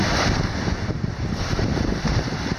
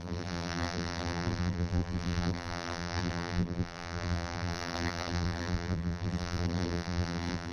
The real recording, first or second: first